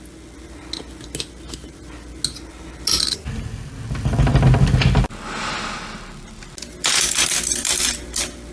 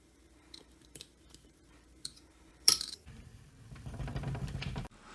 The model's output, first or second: second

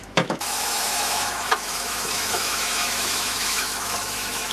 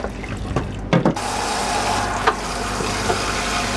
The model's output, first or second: first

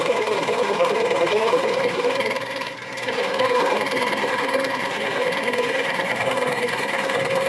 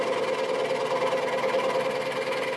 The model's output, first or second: first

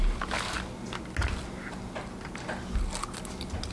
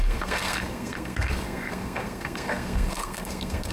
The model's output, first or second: second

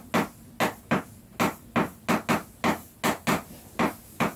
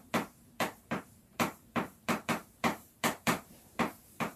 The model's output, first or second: second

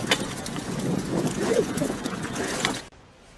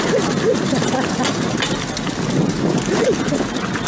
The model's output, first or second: first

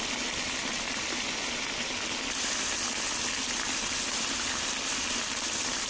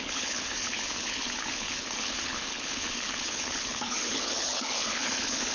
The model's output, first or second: second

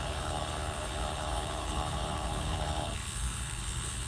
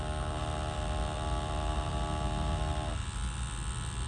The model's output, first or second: first